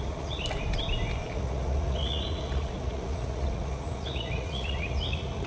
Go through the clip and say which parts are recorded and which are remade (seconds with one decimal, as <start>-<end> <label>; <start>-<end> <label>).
0.0-0.4 remade; 0.4-1.3 recorded; 1.3-5.5 remade